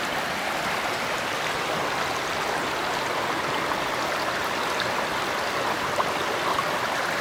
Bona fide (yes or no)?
yes